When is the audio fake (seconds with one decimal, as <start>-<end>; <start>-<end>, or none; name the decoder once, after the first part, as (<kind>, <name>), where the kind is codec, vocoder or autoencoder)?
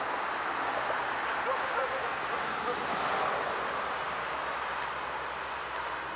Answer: none